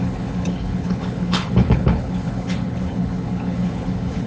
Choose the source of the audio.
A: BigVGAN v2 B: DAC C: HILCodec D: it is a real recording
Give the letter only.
C